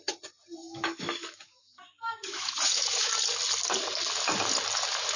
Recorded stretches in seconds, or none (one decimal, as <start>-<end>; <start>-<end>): 0.0-0.6; 3.1-5.2